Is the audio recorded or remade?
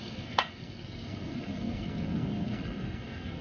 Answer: remade